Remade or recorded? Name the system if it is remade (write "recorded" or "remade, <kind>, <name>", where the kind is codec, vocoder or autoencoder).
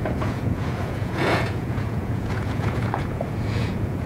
remade, vocoder, Vocos